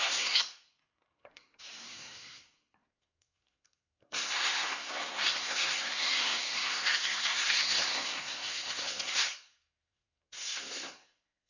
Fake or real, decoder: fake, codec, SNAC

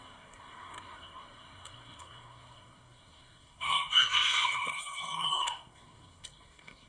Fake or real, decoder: fake, codec, SNAC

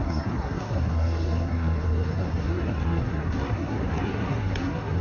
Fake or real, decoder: fake, codec, SNAC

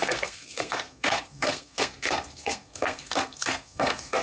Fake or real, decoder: fake, codec, SNAC